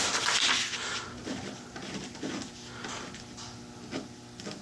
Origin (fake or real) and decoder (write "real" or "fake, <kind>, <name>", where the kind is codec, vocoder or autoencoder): real